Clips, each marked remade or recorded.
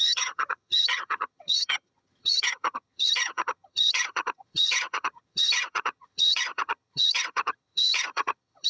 remade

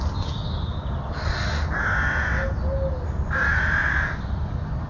recorded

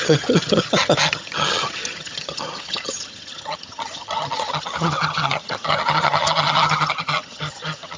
remade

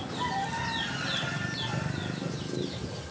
recorded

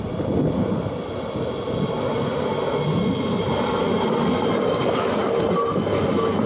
recorded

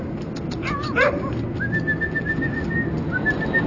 recorded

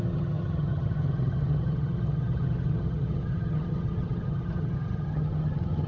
remade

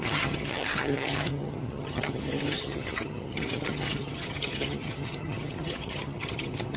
remade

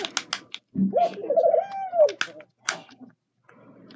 recorded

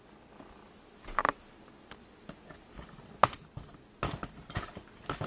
recorded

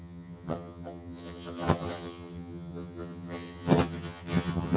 remade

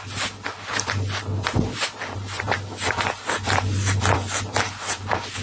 recorded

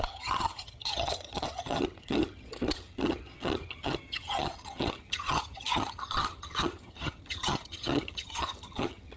remade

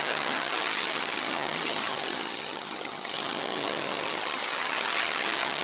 remade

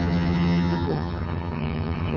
remade